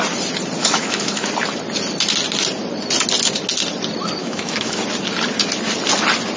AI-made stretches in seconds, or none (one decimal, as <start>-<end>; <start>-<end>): 0.6-1.3; 4.2-4.8